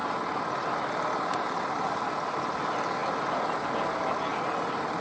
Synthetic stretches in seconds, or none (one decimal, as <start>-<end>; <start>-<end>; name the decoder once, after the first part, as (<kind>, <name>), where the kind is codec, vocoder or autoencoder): none